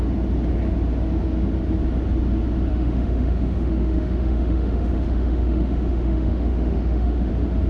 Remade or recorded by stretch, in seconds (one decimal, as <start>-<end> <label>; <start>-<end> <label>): 0.0-2.7 recorded; 2.7-7.3 remade; 7.3-7.7 recorded